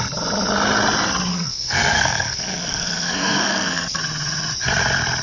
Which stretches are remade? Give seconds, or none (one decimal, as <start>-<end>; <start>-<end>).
1.3-4.0